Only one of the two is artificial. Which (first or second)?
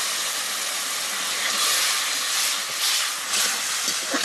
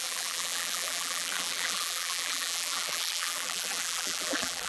second